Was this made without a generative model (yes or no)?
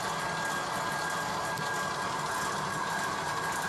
yes